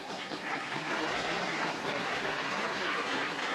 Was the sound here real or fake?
fake